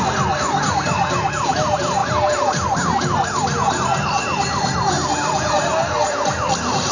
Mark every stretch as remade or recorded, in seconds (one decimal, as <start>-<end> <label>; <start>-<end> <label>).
0.0-6.9 recorded